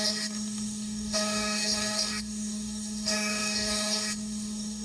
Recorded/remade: remade